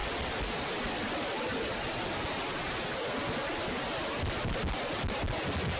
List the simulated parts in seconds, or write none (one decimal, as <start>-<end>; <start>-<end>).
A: none